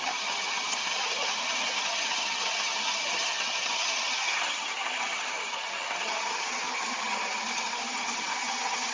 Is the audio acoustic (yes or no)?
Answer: no